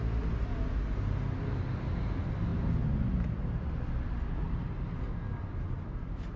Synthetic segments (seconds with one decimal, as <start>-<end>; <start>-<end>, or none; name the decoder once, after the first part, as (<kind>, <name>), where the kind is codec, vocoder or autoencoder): none